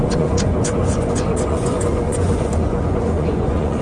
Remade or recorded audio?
remade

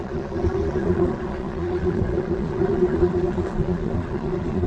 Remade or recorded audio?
remade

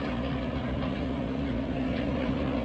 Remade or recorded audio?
remade